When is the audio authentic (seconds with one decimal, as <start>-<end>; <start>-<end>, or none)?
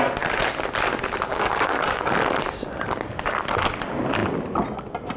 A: 0.0-1.3; 2.1-5.2